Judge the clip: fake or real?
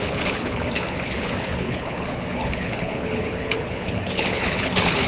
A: fake